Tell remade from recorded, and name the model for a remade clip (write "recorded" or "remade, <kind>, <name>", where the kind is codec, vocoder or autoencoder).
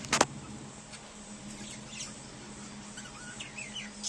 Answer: recorded